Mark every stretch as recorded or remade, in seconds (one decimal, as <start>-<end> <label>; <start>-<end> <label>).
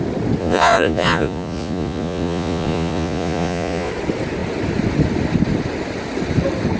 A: 0.0-0.4 recorded; 0.4-3.9 remade; 3.9-6.8 recorded